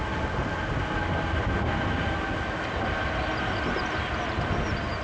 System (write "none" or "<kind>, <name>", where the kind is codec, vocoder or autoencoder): none